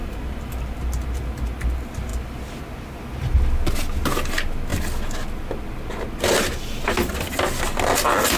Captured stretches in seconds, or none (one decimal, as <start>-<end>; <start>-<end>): 0.6-2.1; 2.6-8.4